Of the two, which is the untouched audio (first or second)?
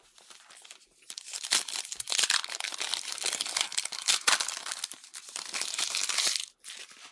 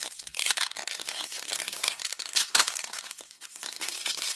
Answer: first